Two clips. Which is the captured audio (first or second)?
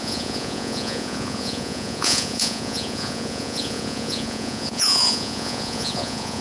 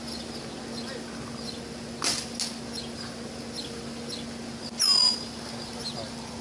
second